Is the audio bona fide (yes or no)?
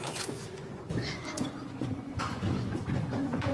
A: no